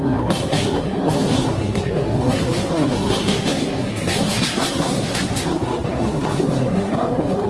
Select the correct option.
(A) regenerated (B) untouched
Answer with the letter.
A